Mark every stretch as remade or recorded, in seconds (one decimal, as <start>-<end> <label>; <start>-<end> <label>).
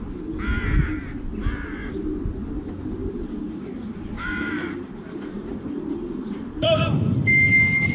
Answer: 0.0-3.0 recorded; 3.0-7.5 remade; 7.5-7.9 recorded